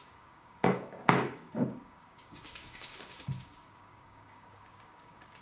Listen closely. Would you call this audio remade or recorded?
remade